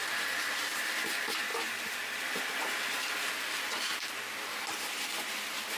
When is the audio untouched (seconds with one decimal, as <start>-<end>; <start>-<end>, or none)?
0.0-5.8